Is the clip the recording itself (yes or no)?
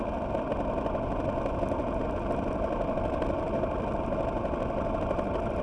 yes